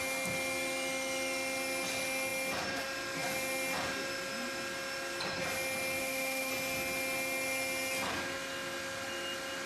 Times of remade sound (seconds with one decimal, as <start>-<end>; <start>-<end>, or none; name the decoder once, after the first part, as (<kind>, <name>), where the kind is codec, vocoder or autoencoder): 6.0-6.5 (autoencoder, DAC-VAE)